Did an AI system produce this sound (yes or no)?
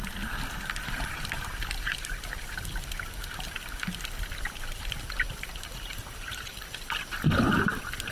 no